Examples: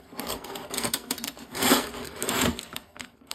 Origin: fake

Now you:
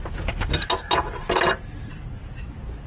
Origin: real